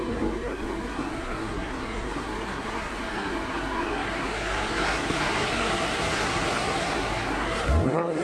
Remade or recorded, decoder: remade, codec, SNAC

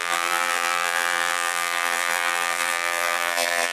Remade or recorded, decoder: remade, vocoder, BigVGAN v2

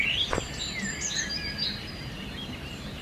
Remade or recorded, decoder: recorded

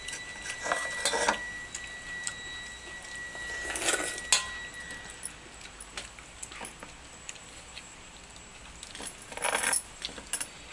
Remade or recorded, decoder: recorded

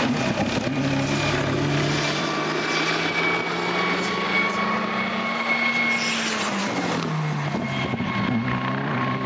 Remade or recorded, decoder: recorded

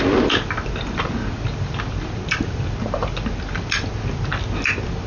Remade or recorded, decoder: recorded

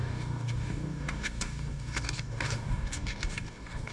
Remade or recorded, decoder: remade, codec, DAC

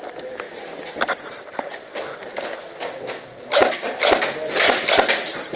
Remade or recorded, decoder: recorded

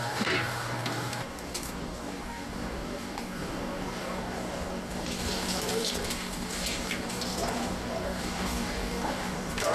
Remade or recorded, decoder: remade, codec, DAC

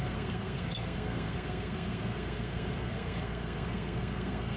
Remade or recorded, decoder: remade, codec, SNAC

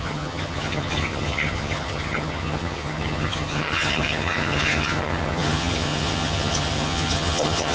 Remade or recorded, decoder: remade, vocoder, HiFi-GAN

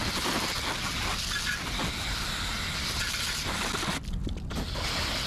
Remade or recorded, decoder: recorded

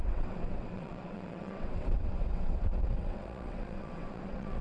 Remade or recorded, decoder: remade, vocoder, WaveNeXt